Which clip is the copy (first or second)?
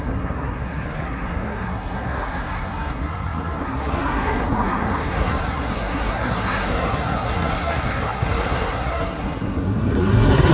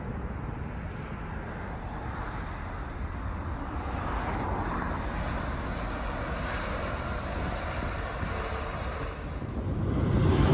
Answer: first